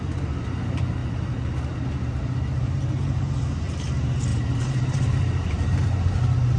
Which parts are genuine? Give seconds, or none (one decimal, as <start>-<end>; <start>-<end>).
0.0-1.0; 1.8-4.3; 6.1-6.6